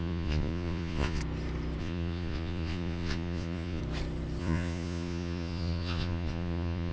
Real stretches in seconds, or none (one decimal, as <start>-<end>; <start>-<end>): 1.2-1.8; 3.8-4.4